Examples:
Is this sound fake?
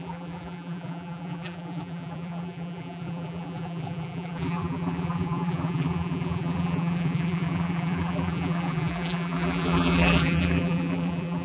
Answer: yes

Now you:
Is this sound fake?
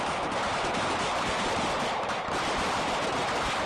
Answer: no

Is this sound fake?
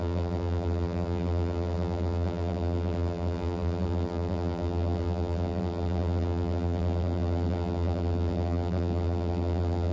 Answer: yes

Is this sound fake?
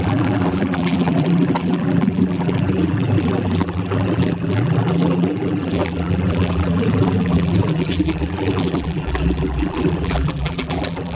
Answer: yes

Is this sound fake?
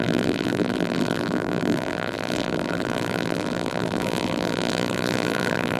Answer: yes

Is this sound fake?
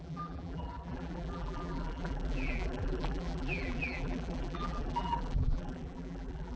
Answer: yes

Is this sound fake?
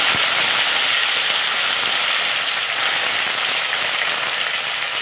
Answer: no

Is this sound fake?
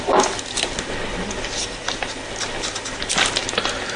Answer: no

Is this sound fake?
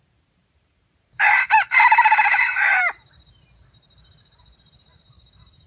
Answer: yes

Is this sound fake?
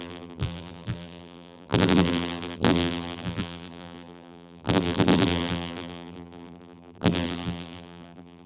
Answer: yes